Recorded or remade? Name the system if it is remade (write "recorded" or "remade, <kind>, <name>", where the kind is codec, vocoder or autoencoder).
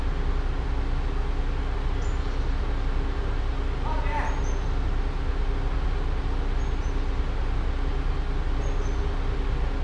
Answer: recorded